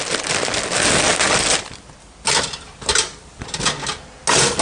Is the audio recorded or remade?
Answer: recorded